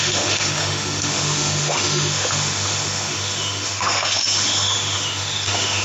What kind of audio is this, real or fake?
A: fake